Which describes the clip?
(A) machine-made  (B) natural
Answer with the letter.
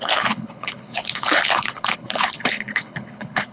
A